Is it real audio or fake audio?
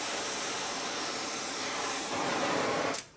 fake